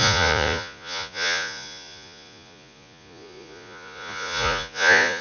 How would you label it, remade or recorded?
remade